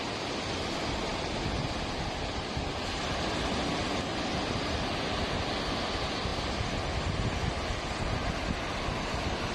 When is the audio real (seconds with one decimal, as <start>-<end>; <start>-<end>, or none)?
0.0-9.5